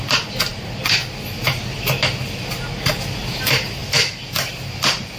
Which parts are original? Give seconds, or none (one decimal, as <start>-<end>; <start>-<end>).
0.0-5.2